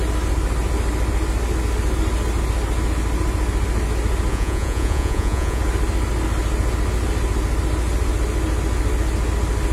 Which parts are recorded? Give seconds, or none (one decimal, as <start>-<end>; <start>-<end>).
0.0-4.3; 5.6-9.7